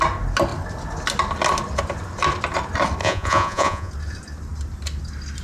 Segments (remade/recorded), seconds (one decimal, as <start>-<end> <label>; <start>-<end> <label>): 0.0-3.0 recorded; 3.0-3.9 remade; 3.9-5.4 recorded